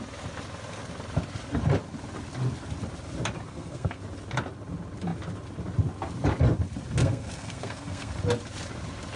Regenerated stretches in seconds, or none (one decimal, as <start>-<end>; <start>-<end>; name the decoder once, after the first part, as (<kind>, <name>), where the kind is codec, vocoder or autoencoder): 3.5-4.0 (codec, SNAC); 7.0-8.1